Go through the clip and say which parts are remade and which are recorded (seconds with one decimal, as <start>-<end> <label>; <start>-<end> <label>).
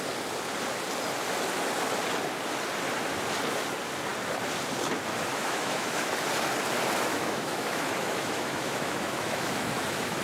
0.0-5.3 recorded; 5.3-6.1 remade; 6.1-7.1 recorded; 7.1-10.2 remade